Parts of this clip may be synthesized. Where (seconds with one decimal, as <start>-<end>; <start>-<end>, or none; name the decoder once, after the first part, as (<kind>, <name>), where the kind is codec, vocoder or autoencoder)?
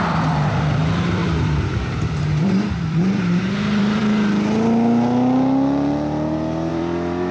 0.0-4.0 (vocoder, BigVGAN v2); 6.7-7.3